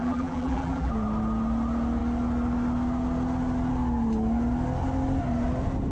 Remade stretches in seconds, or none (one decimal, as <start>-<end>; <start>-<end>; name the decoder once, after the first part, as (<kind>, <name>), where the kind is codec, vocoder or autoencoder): 0.0-0.9 (vocoder, BigVGAN v2)